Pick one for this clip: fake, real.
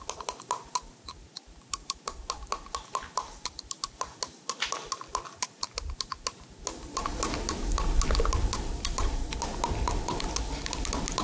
real